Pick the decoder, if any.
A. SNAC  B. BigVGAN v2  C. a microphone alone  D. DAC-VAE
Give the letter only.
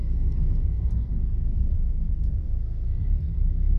A